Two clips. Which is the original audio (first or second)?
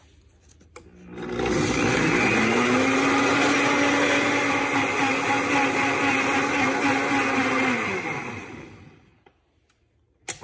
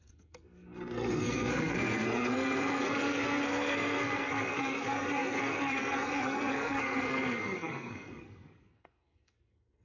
first